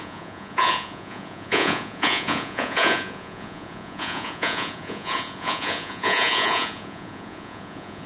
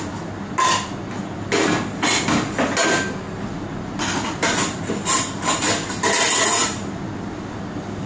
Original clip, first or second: second